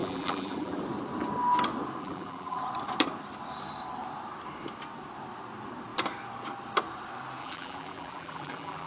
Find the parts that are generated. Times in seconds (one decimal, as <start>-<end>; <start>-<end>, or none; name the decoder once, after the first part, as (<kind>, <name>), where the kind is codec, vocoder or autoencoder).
0.0-0.8 (vocoder, BigVGAN v2); 2.0-2.6; 7.4-8.9